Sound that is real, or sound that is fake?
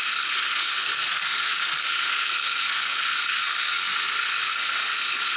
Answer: fake